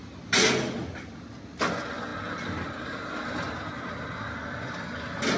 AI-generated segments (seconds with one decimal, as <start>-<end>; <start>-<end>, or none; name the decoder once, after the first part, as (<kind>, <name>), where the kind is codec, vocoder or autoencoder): none